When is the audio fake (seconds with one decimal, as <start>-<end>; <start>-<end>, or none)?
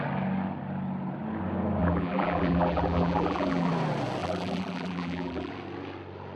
1.8-3.7; 4.2-5.5